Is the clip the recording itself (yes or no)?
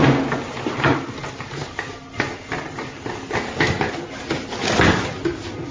yes